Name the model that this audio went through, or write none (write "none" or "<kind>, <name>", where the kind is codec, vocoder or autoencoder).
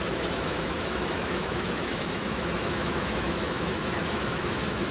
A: autoencoder, DAC-VAE